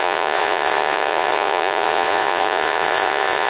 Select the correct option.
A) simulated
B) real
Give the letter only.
A